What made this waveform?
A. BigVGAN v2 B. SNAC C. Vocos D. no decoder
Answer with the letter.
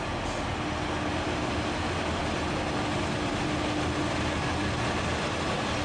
D